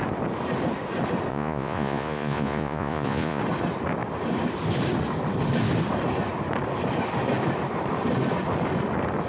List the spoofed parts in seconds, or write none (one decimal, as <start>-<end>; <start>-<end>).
1.3-3.4